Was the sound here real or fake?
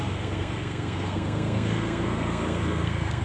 fake